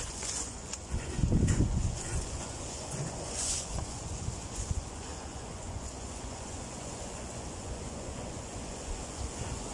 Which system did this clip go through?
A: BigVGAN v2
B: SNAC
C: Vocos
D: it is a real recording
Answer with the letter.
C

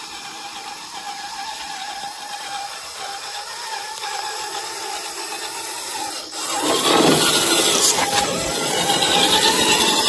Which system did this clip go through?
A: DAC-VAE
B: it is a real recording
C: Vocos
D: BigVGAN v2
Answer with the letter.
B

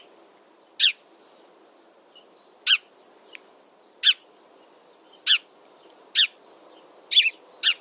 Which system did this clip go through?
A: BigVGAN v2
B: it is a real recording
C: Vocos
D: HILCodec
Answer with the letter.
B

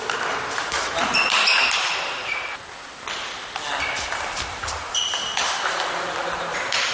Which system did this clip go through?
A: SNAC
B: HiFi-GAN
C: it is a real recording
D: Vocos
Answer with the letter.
C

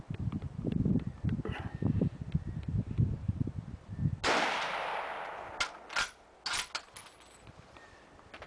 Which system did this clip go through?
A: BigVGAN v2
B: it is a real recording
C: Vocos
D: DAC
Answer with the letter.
B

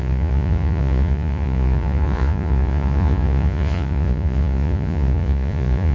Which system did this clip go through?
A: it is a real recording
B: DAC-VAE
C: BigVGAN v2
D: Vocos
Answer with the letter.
D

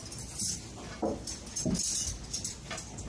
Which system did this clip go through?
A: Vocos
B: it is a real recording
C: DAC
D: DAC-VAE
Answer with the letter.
B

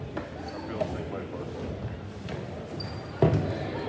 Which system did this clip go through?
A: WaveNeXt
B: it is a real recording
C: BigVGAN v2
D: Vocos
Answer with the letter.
B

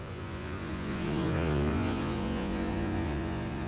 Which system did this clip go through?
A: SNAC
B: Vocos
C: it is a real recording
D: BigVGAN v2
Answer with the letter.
B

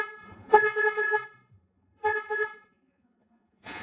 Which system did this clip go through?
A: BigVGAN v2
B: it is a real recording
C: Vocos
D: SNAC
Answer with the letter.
C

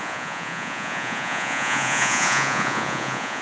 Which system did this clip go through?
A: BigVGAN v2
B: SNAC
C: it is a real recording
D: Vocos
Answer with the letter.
D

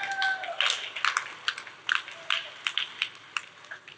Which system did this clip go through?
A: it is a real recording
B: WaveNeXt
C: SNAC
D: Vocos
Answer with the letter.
A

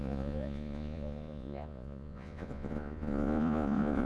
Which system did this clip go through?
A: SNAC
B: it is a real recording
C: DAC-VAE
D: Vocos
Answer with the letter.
D